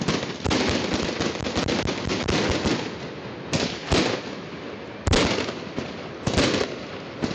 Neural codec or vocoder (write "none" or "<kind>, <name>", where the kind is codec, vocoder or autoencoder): none